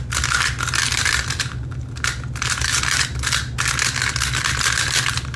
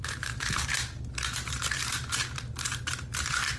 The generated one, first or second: second